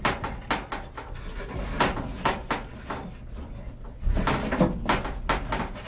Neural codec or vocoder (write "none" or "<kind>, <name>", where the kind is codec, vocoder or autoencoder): none